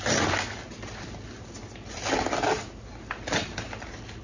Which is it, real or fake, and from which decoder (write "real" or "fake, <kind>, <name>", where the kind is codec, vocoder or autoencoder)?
real